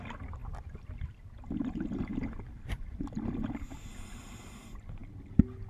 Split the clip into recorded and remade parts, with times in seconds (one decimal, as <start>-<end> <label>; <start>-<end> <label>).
0.0-5.7 recorded